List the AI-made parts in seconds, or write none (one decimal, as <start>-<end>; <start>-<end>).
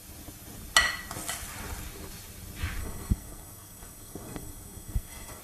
2.8-5.4